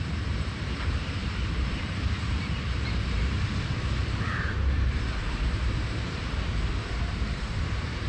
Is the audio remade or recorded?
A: remade